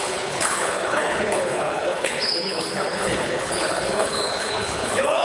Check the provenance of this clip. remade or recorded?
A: remade